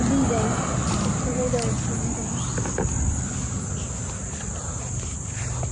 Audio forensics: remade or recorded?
recorded